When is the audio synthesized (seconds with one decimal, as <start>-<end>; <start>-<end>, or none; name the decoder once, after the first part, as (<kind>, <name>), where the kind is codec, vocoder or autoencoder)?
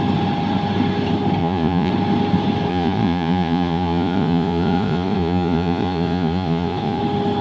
1.4-1.9 (vocoder, Vocos); 2.7-7.0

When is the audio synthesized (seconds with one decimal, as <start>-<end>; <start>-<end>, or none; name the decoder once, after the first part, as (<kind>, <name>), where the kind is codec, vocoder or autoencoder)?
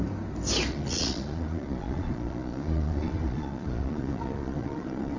0.7-5.2 (vocoder, Vocos)